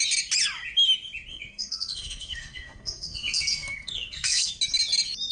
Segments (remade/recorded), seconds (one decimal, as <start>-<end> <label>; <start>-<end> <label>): 0.0-1.3 recorded; 1.3-4.5 remade; 4.5-5.3 recorded